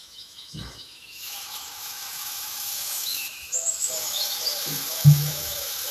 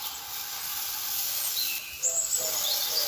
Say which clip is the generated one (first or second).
first